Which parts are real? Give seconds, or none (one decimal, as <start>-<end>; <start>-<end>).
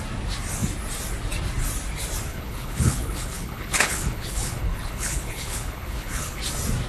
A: 0.0-2.3; 6.4-6.9